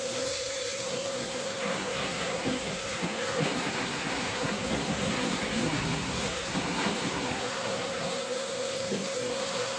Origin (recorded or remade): remade